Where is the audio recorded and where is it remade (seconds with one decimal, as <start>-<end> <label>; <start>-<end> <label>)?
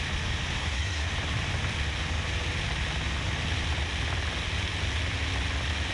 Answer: 0.0-0.6 recorded; 0.6-1.1 remade; 1.1-5.9 recorded